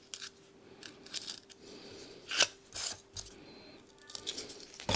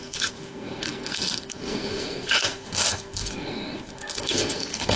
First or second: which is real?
first